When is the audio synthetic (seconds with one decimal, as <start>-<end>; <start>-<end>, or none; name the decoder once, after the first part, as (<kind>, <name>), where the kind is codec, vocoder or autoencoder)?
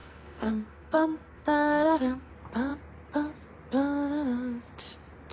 0.0-2.3 (codec, SNAC)